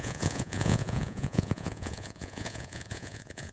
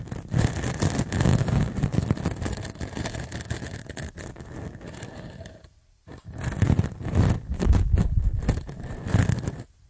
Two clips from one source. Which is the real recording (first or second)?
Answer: second